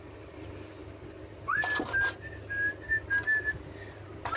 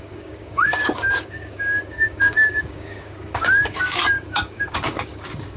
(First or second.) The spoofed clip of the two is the second